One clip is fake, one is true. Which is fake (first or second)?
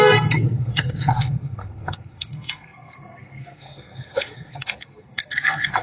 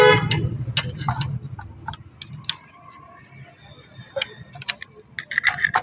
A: first